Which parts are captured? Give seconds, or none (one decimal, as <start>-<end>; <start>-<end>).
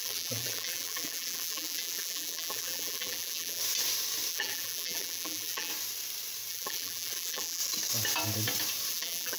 3.6-4.3; 5.7-6.5; 7.6-8.9